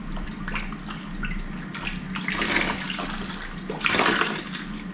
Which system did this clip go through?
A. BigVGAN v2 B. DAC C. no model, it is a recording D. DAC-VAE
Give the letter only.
C